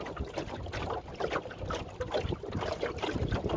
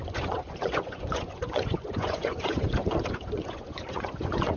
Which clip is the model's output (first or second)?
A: second